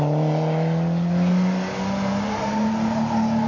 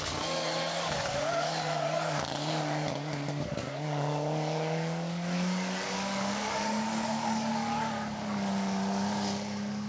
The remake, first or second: second